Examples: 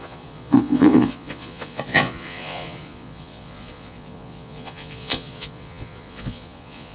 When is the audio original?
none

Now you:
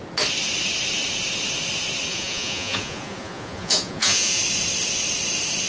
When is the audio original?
0.0-2.1; 4.4-5.7

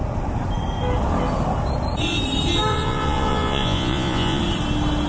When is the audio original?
0.0-2.7; 4.4-5.1